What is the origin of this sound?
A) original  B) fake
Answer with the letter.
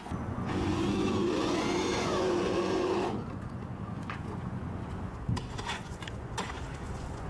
B